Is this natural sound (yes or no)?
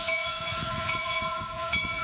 no